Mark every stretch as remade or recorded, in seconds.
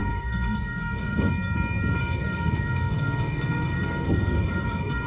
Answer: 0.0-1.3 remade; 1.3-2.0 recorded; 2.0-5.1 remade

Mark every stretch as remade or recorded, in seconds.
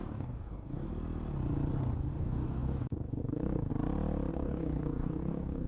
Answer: 0.0-0.9 remade; 0.9-2.1 recorded; 2.1-3.7 remade; 3.7-4.3 recorded; 4.3-5.7 remade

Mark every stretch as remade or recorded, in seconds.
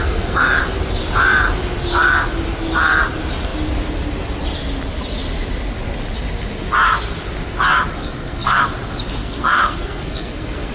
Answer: 0.0-0.6 remade; 0.6-8.0 recorded; 8.0-8.6 remade; 8.6-9.2 recorded; 9.2-10.7 remade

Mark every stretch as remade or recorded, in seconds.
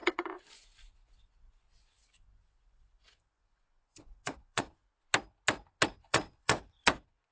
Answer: 0.0-4.8 remade; 4.8-5.9 recorded; 5.9-7.3 remade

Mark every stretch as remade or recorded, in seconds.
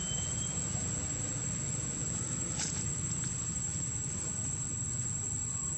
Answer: 0.0-5.8 recorded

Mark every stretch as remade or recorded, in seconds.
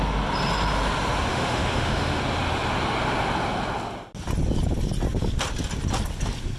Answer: 0.0-1.3 recorded; 1.3-2.2 remade; 2.2-6.6 recorded